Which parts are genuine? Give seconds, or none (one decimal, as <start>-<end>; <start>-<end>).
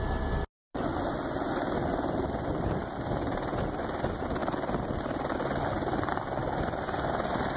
0.0-0.7; 2.2-2.8; 4.0-7.6